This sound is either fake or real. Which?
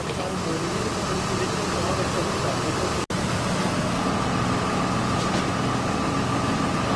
real